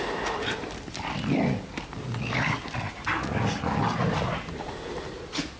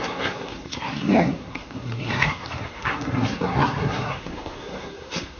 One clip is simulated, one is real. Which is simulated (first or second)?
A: second